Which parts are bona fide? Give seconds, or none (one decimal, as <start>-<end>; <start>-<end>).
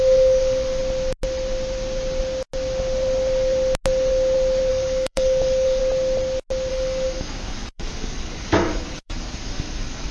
0.8-4.7; 5.8-6.7